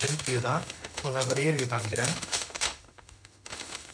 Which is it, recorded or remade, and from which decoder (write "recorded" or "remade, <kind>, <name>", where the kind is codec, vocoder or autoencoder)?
remade, autoencoder, DAC-VAE